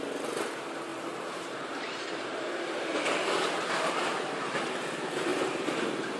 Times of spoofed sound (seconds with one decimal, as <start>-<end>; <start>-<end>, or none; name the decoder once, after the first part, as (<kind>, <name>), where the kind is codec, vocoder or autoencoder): 0.9-4.6 (vocoder, BigVGAN v2)